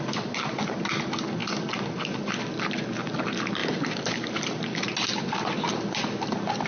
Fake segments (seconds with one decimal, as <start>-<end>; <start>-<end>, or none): none